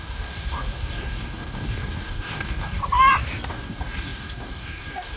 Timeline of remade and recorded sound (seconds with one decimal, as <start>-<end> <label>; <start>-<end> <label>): 0.0-2.8 remade; 2.8-3.5 recorded; 3.5-5.2 remade